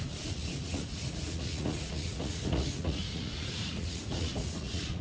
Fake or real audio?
fake